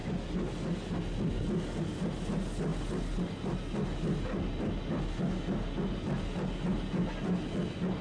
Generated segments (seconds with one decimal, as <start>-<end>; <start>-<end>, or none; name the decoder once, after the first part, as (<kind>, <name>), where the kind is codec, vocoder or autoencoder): none